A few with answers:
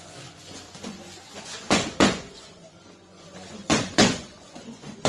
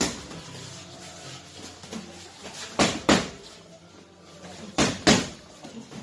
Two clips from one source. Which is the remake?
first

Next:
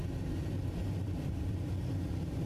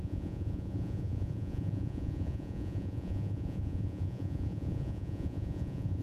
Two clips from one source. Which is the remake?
second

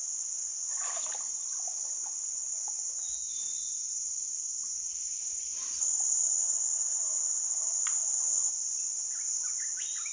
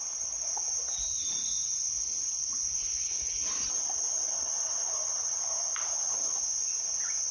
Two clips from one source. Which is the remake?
second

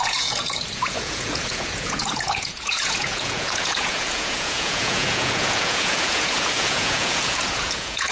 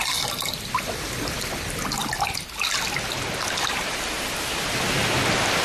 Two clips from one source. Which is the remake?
first